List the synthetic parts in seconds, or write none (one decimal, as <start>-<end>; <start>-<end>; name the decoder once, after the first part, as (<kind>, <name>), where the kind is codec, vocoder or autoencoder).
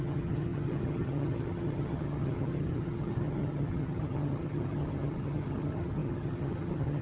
0.0-7.0 (vocoder, HiFi-GAN)